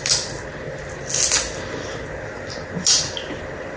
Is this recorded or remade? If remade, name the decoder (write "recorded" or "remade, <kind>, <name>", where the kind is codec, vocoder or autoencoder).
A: recorded